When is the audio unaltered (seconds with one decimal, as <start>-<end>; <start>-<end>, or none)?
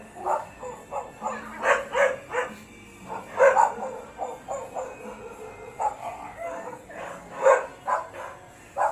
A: 0.8-5.8; 7.7-8.9